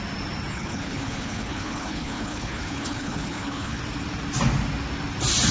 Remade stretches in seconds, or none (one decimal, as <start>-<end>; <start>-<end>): 0.5-3.8